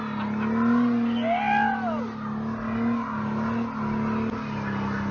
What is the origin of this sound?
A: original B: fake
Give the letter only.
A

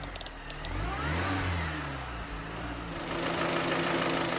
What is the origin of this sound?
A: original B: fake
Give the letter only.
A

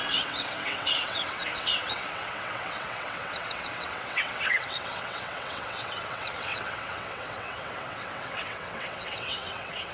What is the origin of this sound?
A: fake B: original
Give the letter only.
A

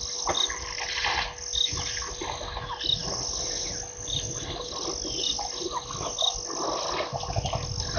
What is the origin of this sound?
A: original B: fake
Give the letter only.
A